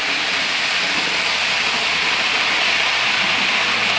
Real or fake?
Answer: real